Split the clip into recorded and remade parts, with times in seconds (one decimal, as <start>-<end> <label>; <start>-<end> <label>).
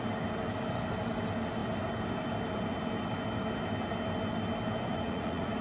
0.0-4.9 recorded; 4.9-5.6 remade